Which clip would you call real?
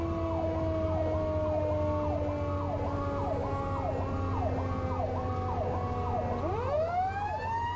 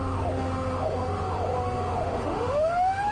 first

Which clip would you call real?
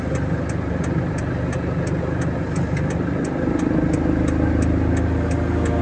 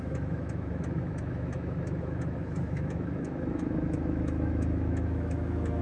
first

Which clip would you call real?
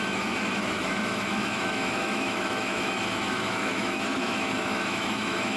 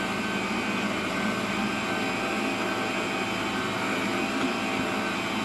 second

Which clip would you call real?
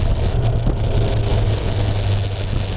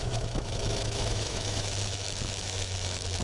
first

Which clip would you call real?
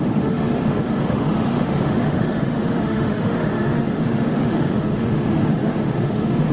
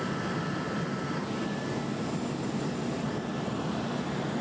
second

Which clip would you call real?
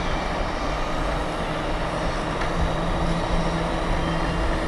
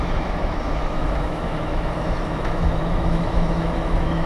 first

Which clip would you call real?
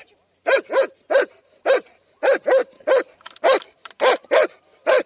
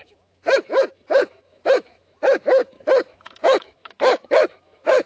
first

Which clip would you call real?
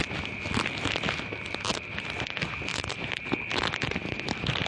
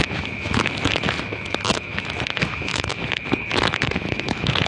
first